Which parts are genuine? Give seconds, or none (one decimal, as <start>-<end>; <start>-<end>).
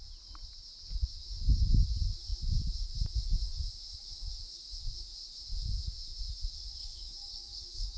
0.0-6.8